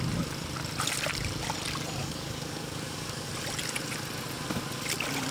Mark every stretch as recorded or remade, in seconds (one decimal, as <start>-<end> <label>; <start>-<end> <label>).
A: 0.0-2.0 recorded; 2.0-3.3 remade; 3.3-5.3 recorded